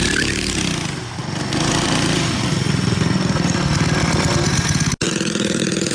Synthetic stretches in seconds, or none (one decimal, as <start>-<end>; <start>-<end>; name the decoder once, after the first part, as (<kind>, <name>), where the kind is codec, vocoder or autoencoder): none